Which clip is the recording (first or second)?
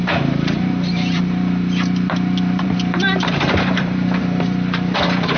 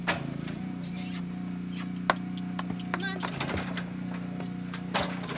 second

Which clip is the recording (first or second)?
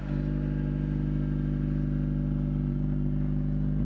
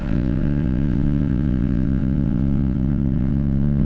first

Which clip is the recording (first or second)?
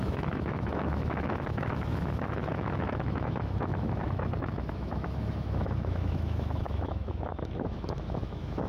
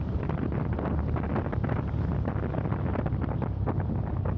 second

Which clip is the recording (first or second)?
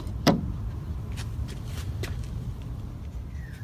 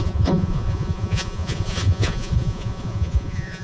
first